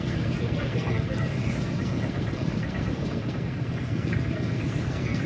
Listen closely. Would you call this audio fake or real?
fake